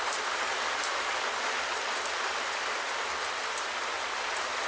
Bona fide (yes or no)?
yes